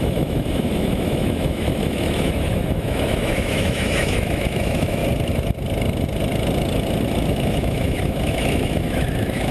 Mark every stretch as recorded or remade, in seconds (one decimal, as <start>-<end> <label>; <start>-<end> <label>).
0.0-5.0 remade; 5.0-7.3 recorded; 7.3-9.5 remade